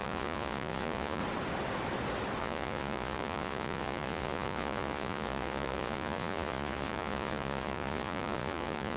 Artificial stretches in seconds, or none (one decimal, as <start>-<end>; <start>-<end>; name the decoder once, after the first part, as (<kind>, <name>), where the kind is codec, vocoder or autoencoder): 0.0-1.2 (vocoder, Vocos); 2.4-9.0